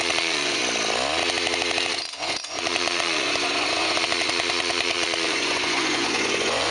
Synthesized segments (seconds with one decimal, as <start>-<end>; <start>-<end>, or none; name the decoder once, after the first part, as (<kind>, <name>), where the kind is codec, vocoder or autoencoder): 0.0-0.6 (vocoder, Vocos); 1.9-6.7